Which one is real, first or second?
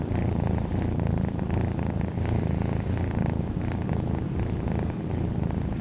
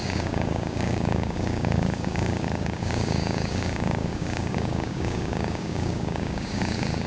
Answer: first